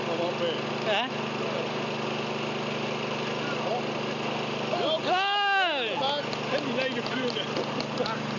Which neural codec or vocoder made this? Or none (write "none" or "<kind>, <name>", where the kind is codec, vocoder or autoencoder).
none